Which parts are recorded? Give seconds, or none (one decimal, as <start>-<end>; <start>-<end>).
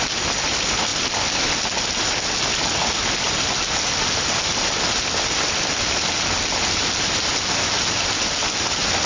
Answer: 0.0-9.1